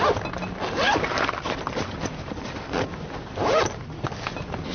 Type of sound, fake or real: fake